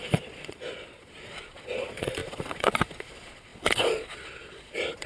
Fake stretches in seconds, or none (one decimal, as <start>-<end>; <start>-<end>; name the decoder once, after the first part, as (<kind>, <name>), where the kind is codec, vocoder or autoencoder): 0.0-5.1 (vocoder, Vocos)